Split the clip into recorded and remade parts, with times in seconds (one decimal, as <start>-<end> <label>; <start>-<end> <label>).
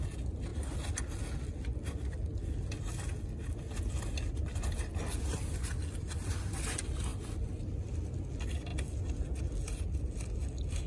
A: 0.0-10.9 recorded